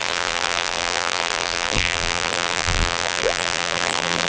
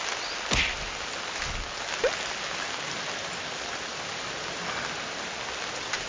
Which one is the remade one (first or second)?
first